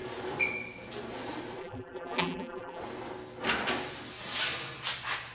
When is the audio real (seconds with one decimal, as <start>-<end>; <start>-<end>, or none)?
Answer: 0.0-1.6; 2.8-5.3